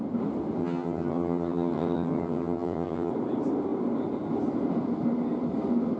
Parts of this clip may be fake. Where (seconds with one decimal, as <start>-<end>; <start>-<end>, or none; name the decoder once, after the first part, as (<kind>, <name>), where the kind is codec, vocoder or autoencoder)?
0.6-3.1 (vocoder, HiFi-GAN)